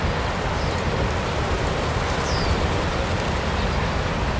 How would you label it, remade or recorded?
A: recorded